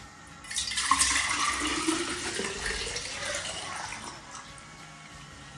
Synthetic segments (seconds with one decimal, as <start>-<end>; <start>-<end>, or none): none